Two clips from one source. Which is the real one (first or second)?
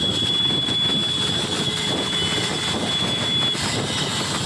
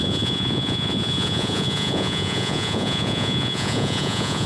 first